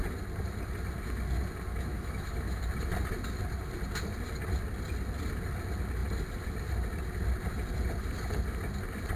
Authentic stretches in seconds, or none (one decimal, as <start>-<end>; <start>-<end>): 0.0-1.7; 2.6-9.2